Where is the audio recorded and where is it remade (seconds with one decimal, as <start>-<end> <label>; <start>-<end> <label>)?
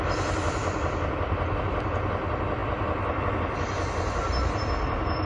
0.0-5.3 recorded